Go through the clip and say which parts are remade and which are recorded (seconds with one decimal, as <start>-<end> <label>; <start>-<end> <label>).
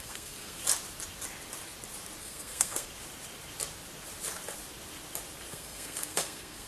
0.0-0.6 remade; 0.6-2.2 recorded; 2.2-2.9 remade; 2.9-5.5 recorded; 5.5-6.7 remade